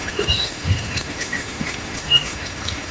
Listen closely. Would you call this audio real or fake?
fake